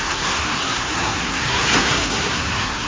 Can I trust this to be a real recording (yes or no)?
no